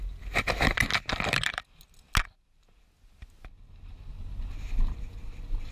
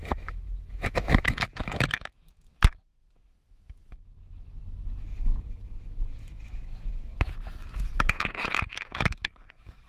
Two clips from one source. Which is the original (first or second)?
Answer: first